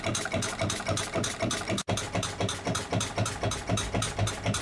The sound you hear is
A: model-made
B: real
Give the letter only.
B